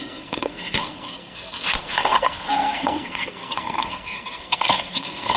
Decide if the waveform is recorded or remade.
remade